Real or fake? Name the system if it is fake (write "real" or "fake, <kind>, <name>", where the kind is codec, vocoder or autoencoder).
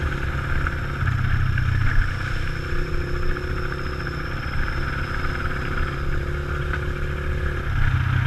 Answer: real